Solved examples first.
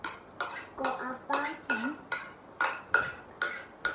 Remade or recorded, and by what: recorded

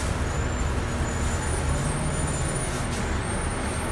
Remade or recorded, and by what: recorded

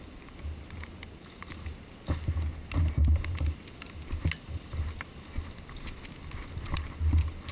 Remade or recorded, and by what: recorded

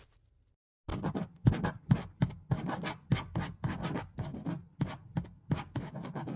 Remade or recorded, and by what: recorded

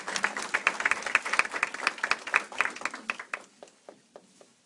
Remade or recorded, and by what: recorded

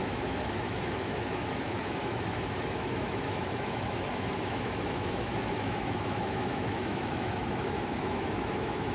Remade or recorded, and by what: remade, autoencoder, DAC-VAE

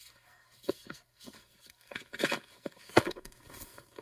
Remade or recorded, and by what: remade, codec, SNAC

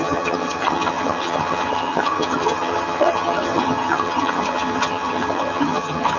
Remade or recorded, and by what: remade, vocoder, HiFi-GAN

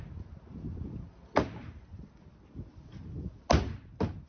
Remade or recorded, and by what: recorded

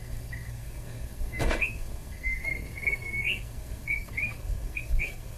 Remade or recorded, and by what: remade, codec, SNAC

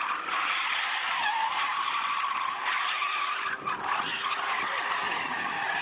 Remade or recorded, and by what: remade, vocoder, BigVGAN v2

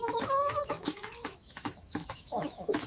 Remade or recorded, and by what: remade, autoencoder, DAC-VAE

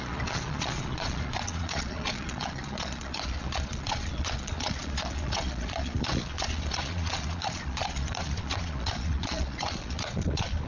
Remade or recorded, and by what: remade, vocoder, Vocos